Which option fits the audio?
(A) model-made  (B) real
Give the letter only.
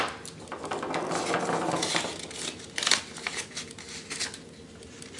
B